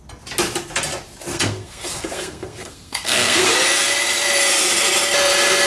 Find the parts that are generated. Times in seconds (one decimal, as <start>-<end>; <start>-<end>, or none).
1.3-3.5